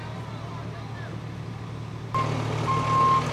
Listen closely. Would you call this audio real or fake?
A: real